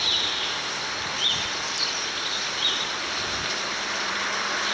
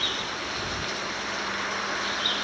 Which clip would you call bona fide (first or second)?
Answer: second